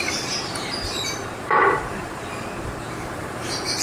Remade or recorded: remade